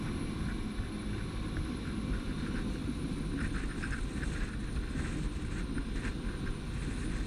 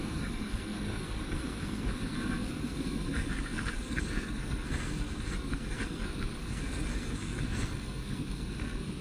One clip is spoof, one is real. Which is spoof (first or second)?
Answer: second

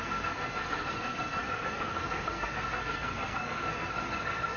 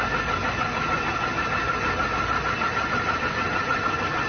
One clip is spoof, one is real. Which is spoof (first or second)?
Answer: first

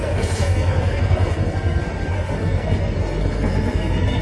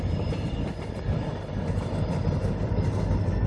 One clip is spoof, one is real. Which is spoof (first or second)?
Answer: first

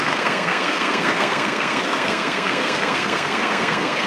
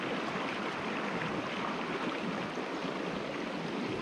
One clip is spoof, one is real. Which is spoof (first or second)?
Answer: first